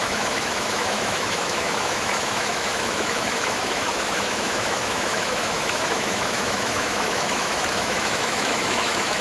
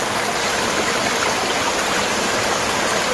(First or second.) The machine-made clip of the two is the first